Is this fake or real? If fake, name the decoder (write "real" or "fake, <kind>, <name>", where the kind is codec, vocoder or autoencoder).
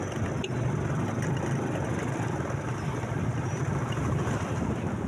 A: real